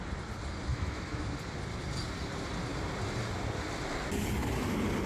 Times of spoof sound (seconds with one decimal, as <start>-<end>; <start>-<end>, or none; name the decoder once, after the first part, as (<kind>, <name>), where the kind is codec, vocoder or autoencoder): 0.7-1.2 (autoencoder, DAC-VAE)